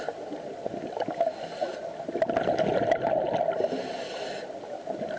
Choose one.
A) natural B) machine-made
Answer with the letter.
A